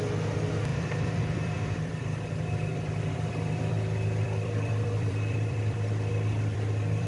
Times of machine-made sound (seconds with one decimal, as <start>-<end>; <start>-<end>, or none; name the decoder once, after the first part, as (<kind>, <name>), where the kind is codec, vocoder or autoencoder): 0.7-2.2 (vocoder, BigVGAN v2); 2.7-7.1